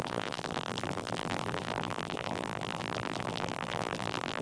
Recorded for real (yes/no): no